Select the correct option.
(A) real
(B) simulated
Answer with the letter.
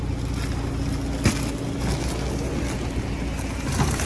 A